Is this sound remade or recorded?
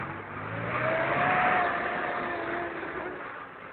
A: recorded